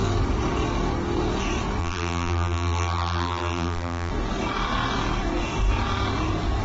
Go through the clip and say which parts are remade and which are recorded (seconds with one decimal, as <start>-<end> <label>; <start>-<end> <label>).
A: 0.0-1.8 recorded; 1.8-4.1 remade; 4.1-6.6 recorded